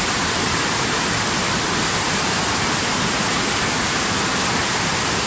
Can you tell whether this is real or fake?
real